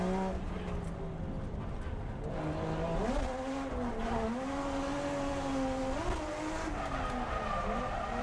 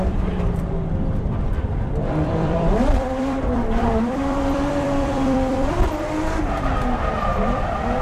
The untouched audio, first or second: first